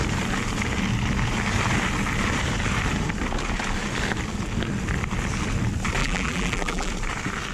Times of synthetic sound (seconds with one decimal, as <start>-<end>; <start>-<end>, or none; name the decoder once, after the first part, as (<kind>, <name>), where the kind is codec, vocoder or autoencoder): 6.0-6.9 (vocoder, BigVGAN v2)